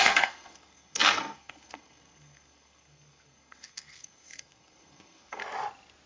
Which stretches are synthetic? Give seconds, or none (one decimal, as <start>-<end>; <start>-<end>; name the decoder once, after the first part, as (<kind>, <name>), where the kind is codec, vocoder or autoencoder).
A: 0.0-5.4 (codec, SNAC)